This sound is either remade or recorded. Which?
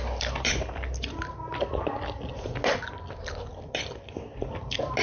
remade